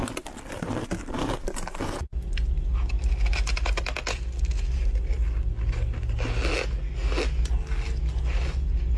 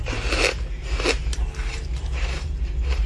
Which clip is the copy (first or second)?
second